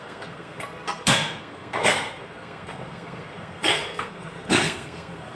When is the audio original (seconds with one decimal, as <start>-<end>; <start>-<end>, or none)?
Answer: none